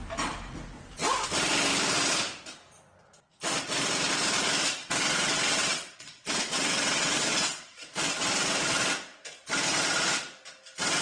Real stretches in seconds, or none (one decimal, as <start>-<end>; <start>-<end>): 0.0-4.8; 7.8-11.0